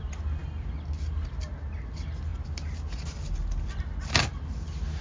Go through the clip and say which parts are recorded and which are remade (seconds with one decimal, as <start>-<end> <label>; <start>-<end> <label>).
0.0-5.0 recorded